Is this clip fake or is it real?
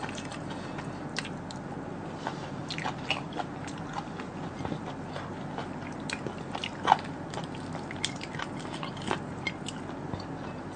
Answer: real